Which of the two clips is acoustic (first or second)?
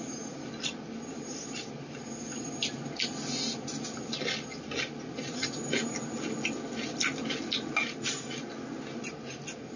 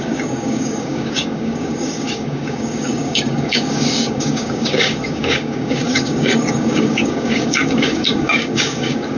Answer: first